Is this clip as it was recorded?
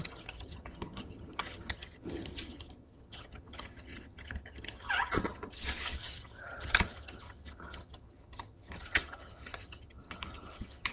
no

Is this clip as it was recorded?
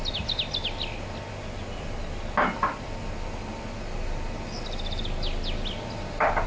yes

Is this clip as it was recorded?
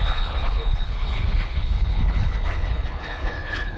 no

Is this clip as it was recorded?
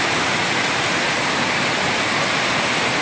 yes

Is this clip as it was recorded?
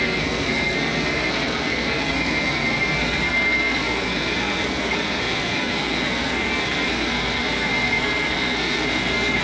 no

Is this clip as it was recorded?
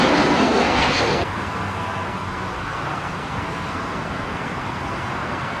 no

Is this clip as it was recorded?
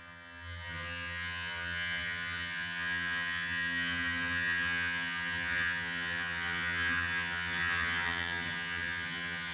no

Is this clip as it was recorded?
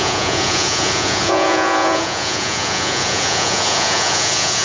no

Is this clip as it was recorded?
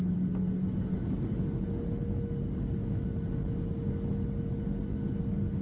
yes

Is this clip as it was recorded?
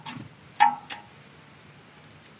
yes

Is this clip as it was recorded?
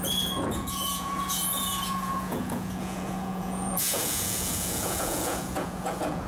no